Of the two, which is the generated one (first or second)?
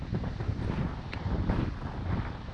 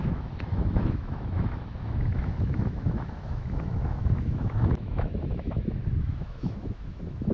second